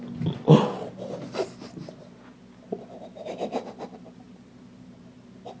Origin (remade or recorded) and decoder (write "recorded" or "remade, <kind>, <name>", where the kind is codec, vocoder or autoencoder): recorded